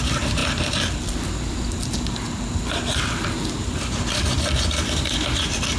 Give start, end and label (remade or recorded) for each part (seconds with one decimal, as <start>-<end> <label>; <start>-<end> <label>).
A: 0.0-0.4 remade; 0.4-3.4 recorded; 3.4-5.8 remade